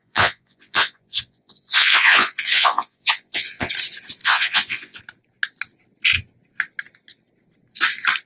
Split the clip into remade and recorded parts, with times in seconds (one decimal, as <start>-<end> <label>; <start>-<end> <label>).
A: 0.0-3.7 remade; 3.7-4.2 recorded; 4.2-5.0 remade; 5.0-8.3 recorded